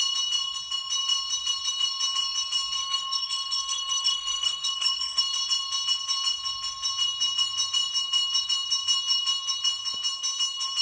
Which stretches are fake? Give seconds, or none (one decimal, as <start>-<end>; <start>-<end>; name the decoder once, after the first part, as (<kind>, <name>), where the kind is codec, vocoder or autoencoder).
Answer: 2.8-5.2 (codec, SNAC)